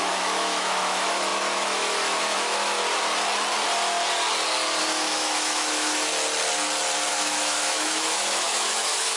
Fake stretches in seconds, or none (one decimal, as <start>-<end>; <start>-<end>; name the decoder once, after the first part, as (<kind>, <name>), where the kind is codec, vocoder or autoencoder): 0.0-2.8 (autoencoder, DAC-VAE); 4.8-6.1; 7.1-9.2